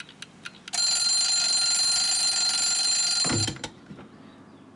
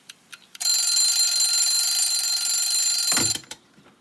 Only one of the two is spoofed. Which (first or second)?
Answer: second